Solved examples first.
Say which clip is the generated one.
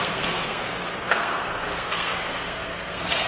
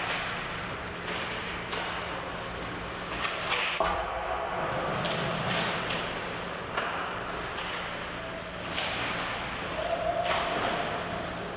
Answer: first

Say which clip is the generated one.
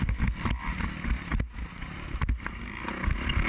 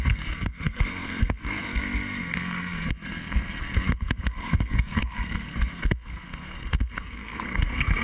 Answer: second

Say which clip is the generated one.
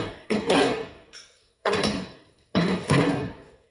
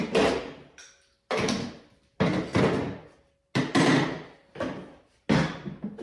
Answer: first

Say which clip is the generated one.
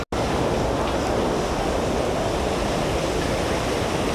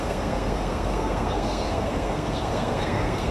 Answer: second